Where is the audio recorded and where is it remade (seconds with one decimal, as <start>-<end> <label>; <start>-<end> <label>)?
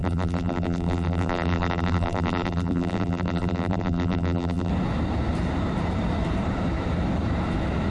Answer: 0.0-4.7 remade; 4.7-7.9 recorded